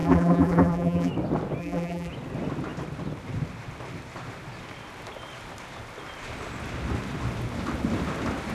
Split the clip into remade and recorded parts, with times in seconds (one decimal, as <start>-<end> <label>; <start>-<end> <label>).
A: 0.0-1.1 remade; 1.1-1.6 recorded; 1.6-2.1 remade; 2.1-8.5 recorded